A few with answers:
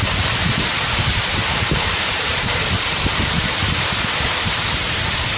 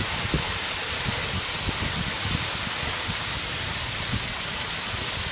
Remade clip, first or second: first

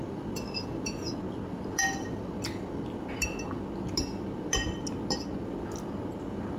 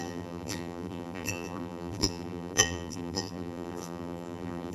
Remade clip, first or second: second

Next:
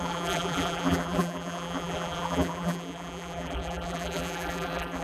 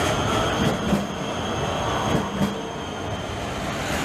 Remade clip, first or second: first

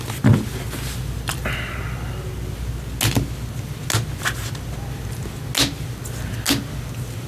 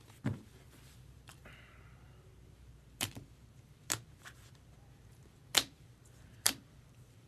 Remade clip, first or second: second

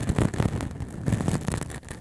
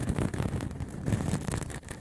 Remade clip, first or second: second